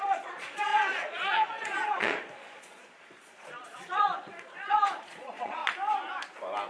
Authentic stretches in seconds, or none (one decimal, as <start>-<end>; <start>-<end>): 5.6-6.7